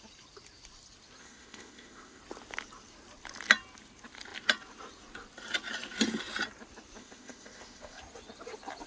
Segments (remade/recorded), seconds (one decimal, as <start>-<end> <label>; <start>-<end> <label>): 0.0-1.2 recorded; 1.2-2.2 remade; 2.2-7.0 recorded; 7.0-8.0 remade; 8.0-8.9 recorded